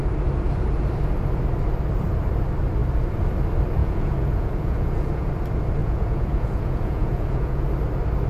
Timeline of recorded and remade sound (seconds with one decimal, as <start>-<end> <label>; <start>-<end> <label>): 0.0-3.8 recorded; 3.8-5.3 remade; 5.3-5.8 recorded; 5.8-7.6 remade; 7.6-8.3 recorded